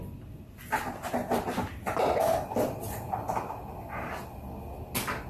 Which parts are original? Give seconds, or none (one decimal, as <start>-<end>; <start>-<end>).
0.0-1.2; 3.1-5.3